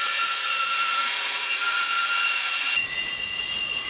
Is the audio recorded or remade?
remade